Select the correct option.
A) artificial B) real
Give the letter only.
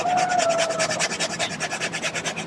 B